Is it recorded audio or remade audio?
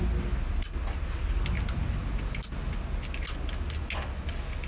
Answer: recorded